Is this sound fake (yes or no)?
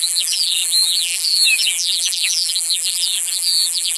yes